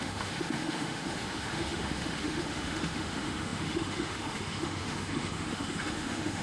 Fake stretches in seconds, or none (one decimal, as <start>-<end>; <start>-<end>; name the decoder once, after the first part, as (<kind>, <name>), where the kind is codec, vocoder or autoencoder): 0.0-6.4 (autoencoder, DAC-VAE)